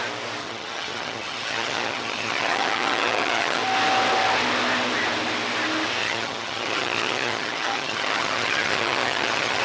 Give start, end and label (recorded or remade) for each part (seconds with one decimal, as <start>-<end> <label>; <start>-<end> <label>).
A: 0.0-0.4 recorded; 0.4-3.6 remade; 3.6-6.0 recorded; 6.0-9.6 remade